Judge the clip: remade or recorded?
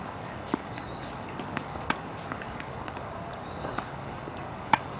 remade